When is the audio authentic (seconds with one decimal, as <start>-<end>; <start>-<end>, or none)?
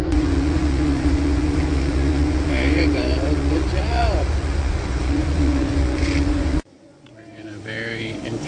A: none